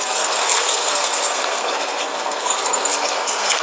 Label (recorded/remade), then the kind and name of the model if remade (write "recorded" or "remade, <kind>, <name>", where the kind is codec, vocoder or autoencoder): remade, codec, SNAC